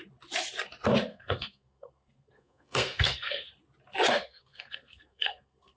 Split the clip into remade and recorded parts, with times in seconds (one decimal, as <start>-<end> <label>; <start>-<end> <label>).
0.0-1.1 recorded; 1.1-3.5 remade; 3.5-4.1 recorded; 4.1-5.8 remade